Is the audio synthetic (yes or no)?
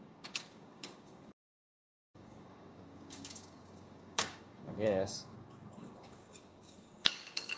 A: yes